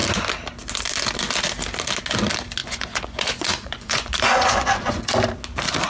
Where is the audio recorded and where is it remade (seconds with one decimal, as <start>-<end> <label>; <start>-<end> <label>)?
0.0-2.6 recorded; 2.6-5.1 remade; 5.1-5.9 recorded